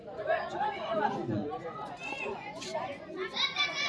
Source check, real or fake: fake